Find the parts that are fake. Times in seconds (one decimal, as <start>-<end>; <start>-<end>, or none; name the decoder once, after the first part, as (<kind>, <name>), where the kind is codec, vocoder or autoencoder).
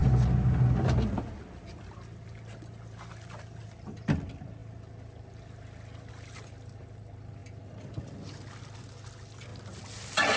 none